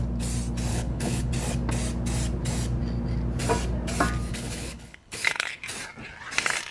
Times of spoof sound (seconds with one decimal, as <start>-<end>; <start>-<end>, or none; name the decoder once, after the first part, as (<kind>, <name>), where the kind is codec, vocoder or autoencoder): 0.7-1.3 (codec, HILCodec); 4.3-5.6